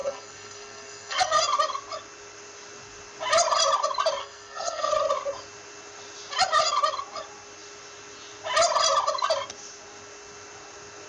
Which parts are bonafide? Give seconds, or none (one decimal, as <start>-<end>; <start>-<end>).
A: 1.4-4.2; 4.9-11.1